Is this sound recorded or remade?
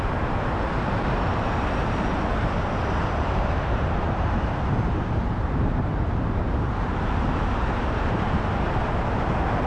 remade